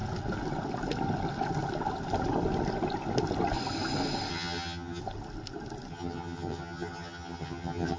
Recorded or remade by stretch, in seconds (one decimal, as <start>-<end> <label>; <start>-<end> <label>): 0.0-4.3 recorded; 4.3-5.0 remade; 5.0-5.9 recorded; 5.9-8.0 remade

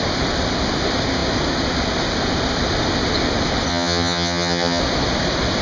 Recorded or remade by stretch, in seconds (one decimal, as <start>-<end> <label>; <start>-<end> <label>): 0.0-3.7 recorded; 3.7-4.8 remade; 4.8-5.6 recorded

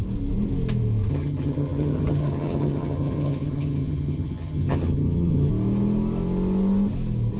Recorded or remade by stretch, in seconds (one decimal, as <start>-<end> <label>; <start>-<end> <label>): 0.0-1.1 recorded; 1.1-5.5 remade; 5.5-7.4 recorded

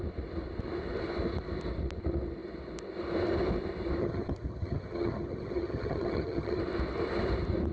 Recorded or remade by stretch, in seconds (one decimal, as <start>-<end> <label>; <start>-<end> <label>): 0.0-4.0 recorded; 4.0-6.6 remade; 6.6-7.7 recorded

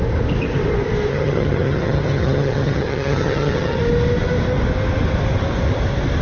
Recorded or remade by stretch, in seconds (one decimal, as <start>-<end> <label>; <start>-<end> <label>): 0.0-1.1 recorded; 1.1-3.8 remade; 3.8-6.2 recorded

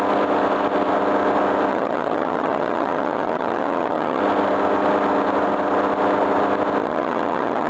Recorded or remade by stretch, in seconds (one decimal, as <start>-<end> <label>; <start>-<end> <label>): 0.0-1.7 recorded; 1.7-4.2 remade; 4.2-6.8 recorded; 6.8-7.7 remade